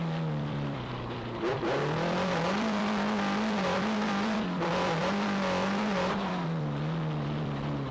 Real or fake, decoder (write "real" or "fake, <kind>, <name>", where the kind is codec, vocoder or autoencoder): fake, vocoder, BigVGAN v2